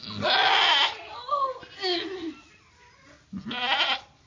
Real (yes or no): yes